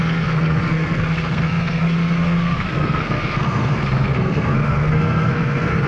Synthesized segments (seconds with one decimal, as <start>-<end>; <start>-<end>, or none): 0.0-5.9